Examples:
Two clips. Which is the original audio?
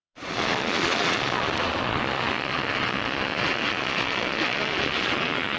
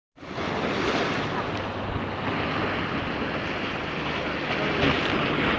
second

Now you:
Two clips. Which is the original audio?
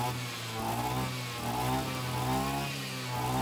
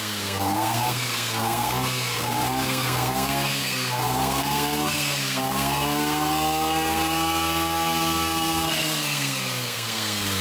first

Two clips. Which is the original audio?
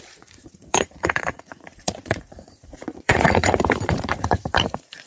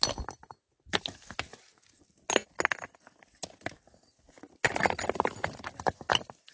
second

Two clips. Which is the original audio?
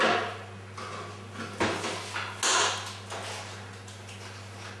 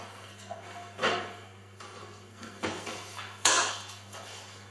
first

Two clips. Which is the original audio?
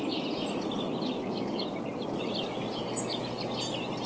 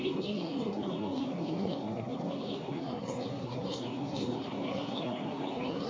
first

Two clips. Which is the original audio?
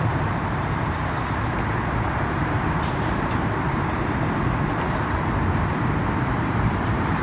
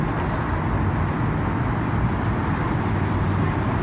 second